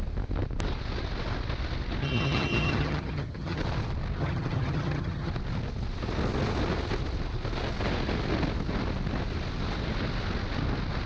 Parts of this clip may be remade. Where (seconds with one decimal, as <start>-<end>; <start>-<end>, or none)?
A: 2.0-3.6; 4.2-5.3